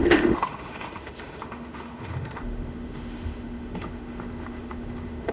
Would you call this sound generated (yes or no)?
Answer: yes